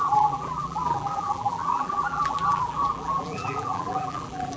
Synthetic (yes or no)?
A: yes